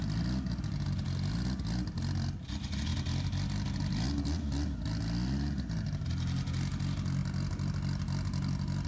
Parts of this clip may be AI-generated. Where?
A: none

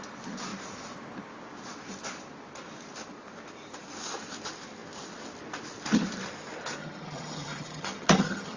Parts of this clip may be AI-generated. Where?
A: 6.8-8.6 (vocoder, HiFi-GAN)

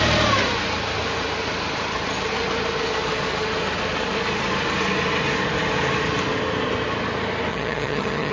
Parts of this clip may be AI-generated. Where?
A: 7.5-8.3 (vocoder, HiFi-GAN)

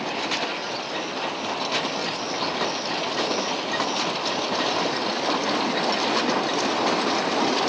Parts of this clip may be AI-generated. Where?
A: none

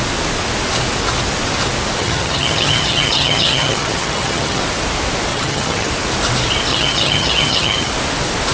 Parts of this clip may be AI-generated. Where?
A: 2.0-4.6 (vocoder, HiFi-GAN); 5.3-5.9; 6.7-7.9

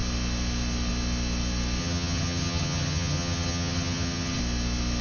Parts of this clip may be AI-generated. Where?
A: 1.8-4.4 (vocoder, HiFi-GAN)